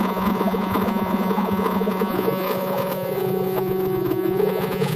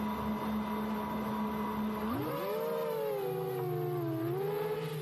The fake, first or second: first